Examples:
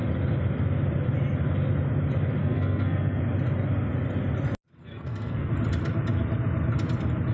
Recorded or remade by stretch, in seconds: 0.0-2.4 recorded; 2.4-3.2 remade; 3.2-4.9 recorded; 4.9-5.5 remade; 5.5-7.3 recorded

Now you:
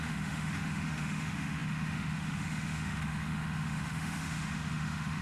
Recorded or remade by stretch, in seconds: 0.0-5.2 remade